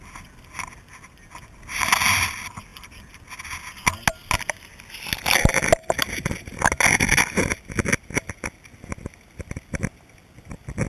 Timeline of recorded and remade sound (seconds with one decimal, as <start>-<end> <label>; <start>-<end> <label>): 0.0-10.9 recorded